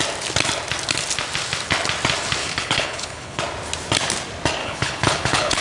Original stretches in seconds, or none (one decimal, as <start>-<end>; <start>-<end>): 0.0-2.4; 3.4-4.6

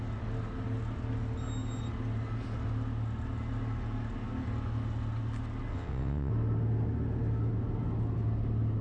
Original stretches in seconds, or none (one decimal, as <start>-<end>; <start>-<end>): 0.0-5.7; 6.3-8.8

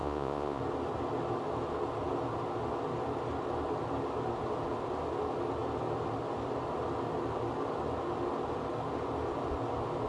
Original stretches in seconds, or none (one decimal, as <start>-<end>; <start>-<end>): 0.6-10.1

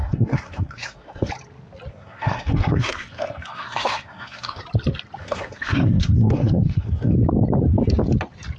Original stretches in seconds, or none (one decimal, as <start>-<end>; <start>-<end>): 1.3-1.9; 4.6-5.2; 7.1-8.6